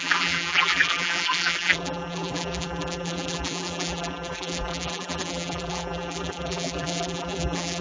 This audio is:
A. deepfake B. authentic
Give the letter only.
A